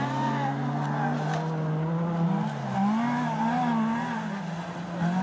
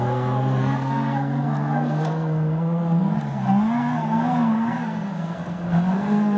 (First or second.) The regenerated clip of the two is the second